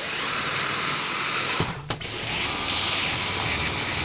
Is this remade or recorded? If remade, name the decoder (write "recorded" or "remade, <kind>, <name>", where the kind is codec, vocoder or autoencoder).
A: recorded